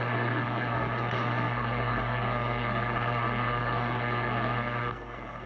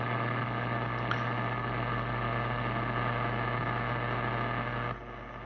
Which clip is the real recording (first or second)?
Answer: second